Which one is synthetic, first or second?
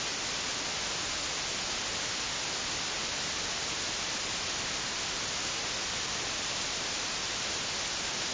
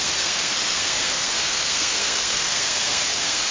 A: second